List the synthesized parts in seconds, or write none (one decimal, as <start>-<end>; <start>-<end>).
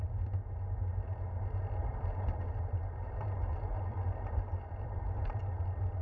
1.8-5.4